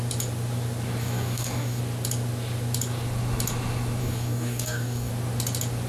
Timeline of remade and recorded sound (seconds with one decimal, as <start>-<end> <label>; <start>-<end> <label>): 0.0-1.0 recorded; 1.0-1.8 remade; 1.8-4.0 recorded; 4.0-5.1 remade; 5.1-5.9 recorded